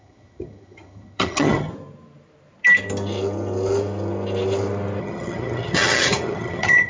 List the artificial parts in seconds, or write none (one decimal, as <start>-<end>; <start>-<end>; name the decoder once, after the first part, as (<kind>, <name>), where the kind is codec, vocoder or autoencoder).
0.0-1.7 (vocoder, HiFi-GAN); 5.0-6.9